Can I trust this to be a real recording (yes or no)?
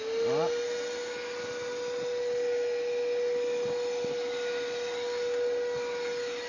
yes